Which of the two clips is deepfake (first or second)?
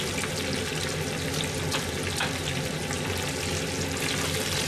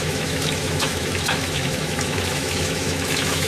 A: second